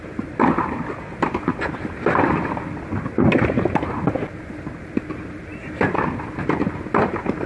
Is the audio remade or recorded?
recorded